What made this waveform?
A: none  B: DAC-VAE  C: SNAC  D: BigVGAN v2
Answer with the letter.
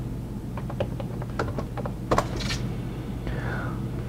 A